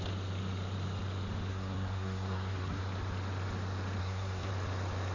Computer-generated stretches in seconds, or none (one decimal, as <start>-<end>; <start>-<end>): 1.5-2.8; 4.0-4.5